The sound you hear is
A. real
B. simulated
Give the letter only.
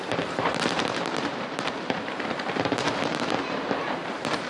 B